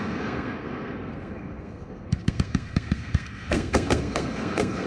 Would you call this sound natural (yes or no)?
no